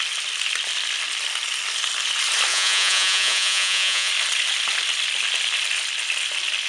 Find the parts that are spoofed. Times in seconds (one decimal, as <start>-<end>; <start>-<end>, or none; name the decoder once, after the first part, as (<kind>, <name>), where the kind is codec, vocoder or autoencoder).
2.5-4.1 (vocoder, Vocos)